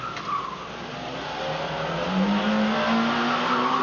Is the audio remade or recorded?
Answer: recorded